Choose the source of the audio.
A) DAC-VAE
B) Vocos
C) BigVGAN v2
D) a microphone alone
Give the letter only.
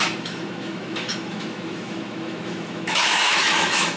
A